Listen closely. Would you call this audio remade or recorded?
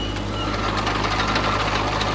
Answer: recorded